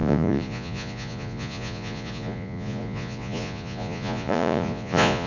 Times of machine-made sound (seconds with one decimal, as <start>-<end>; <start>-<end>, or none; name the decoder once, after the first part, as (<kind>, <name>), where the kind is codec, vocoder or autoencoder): 0.0-5.3 (vocoder, Vocos)

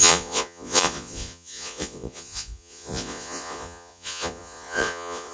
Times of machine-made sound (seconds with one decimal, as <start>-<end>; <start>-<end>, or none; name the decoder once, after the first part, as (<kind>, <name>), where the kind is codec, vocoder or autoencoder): 0.0-5.3 (vocoder, Vocos)

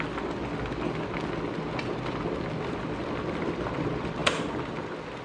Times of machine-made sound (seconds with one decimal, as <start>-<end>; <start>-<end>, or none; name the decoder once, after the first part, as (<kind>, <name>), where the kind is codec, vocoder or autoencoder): 0.0-0.4 (vocoder, BigVGAN v2); 3.5-5.2

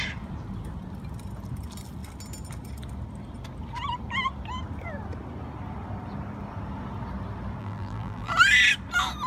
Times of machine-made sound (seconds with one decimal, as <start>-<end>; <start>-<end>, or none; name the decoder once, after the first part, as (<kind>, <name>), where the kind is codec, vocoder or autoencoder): 7.6-8.3 (vocoder, BigVGAN v2)

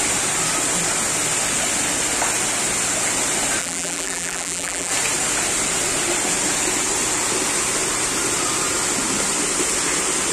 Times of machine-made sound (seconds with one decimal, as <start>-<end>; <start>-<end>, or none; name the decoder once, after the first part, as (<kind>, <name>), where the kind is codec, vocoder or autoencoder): 3.6-4.9 (vocoder, BigVGAN v2)